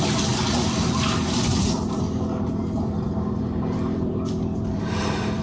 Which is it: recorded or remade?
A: remade